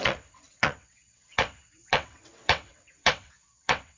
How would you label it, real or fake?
fake